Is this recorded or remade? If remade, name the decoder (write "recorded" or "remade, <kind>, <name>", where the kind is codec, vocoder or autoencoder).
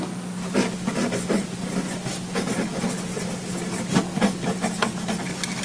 recorded